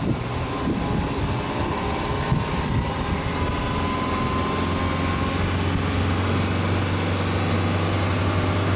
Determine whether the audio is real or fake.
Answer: real